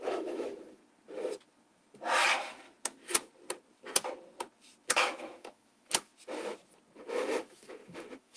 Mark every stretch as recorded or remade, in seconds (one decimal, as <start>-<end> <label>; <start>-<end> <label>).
0.0-0.8 remade; 0.8-4.9 recorded; 4.9-6.1 remade; 6.1-7.1 recorded; 7.1-8.4 remade